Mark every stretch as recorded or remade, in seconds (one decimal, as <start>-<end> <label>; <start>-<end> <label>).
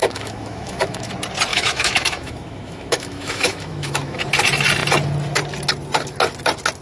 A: 0.0-1.1 remade; 1.1-1.5 recorded; 1.5-4.2 remade; 4.2-6.8 recorded